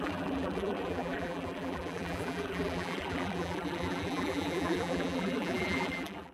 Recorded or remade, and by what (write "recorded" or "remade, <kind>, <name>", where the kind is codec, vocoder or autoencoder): remade, vocoder, BigVGAN v2